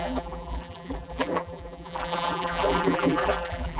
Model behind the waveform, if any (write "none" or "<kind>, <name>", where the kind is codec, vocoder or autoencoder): vocoder, BigVGAN v2